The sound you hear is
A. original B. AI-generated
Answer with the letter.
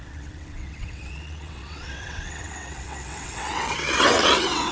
B